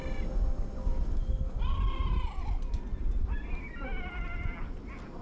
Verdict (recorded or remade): recorded